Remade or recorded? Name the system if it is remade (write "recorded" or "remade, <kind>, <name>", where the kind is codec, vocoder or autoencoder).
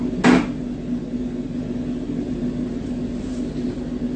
recorded